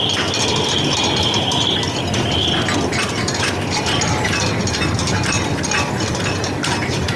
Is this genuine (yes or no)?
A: yes